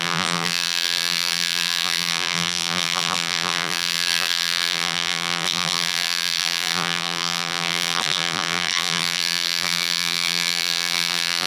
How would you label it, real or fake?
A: fake